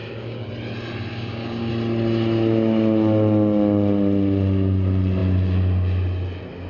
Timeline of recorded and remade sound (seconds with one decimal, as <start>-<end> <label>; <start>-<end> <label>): 0.0-0.5 remade; 0.5-1.1 recorded; 1.1-1.7 remade; 1.7-6.7 recorded